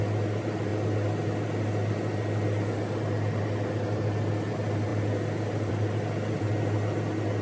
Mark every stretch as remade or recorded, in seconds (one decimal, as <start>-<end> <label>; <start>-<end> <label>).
0.0-7.4 recorded